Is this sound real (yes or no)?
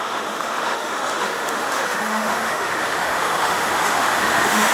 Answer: no